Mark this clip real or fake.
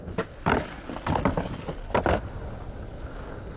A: real